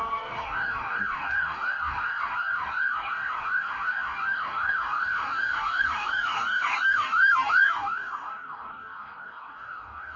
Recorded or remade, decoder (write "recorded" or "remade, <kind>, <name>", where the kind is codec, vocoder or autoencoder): remade, codec, DAC